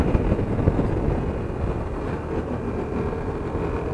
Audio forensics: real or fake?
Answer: real